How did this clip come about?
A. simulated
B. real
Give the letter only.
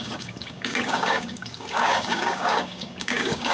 A